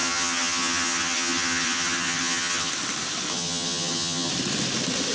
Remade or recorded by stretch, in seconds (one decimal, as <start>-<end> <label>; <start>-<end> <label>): 0.0-2.7 remade; 2.7-3.3 recorded; 3.3-4.3 remade; 4.3-5.1 recorded